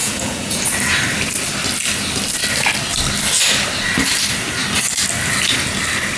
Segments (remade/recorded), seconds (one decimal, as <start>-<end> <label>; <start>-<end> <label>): 0.0-0.6 remade; 0.6-6.2 recorded